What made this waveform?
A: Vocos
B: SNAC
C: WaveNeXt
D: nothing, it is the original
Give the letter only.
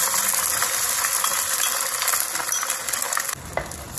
D